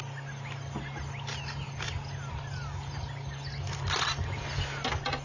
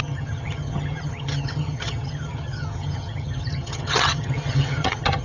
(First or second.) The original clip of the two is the first